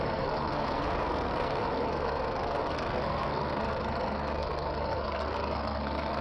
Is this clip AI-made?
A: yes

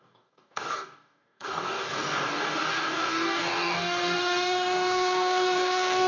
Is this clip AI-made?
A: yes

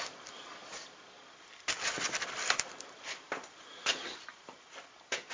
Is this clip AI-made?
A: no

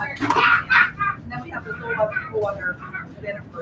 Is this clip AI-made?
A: no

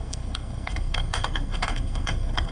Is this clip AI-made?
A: yes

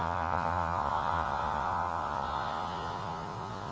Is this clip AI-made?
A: yes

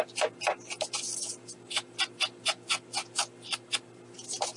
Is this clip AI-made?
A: no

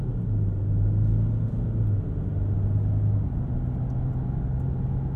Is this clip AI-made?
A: no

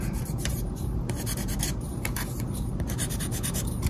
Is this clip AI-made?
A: yes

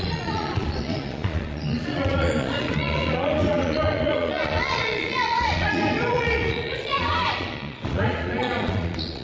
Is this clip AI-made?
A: yes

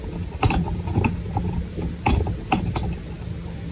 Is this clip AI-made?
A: no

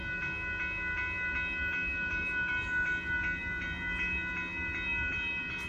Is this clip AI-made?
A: no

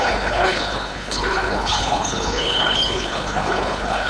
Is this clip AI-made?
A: yes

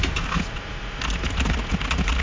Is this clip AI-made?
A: no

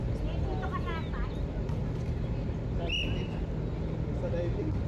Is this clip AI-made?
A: no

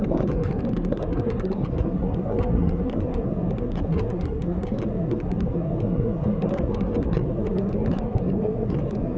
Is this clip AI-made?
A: yes